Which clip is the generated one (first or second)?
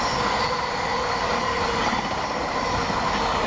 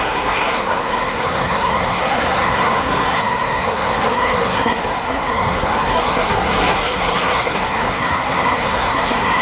second